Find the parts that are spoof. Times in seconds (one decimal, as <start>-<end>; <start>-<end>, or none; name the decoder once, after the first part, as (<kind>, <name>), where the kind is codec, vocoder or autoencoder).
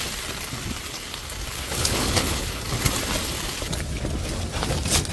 1.5-2.6 (codec, HILCodec)